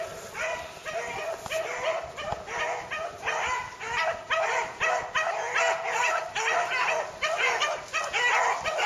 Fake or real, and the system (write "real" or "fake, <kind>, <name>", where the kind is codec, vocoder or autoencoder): real